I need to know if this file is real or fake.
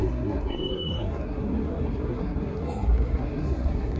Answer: fake